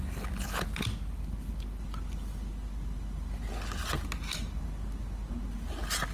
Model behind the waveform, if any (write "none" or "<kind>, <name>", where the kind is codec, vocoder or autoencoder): none